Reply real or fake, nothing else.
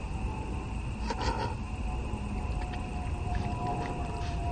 fake